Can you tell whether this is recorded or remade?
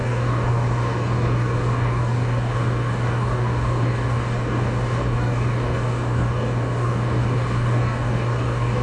remade